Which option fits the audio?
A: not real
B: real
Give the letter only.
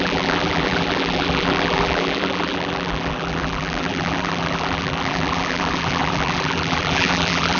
A